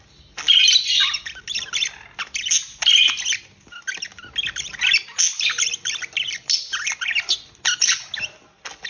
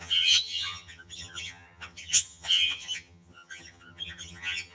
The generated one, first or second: second